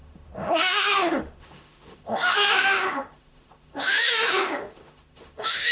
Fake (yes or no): yes